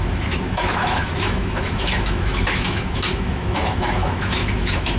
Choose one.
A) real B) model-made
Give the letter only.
B